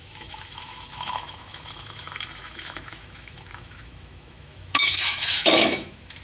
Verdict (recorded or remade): remade